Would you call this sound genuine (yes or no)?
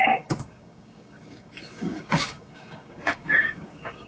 no